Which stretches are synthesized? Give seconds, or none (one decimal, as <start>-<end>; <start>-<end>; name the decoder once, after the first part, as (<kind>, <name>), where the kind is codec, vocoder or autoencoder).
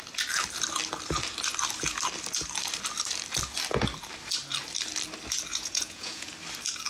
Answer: 5.5-6.3 (vocoder, Vocos)